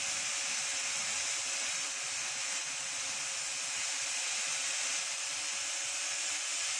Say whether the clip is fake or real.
real